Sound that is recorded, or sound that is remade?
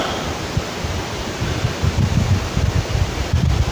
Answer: recorded